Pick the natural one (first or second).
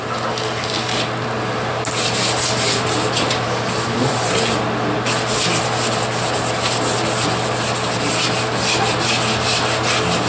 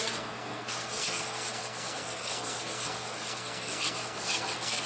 first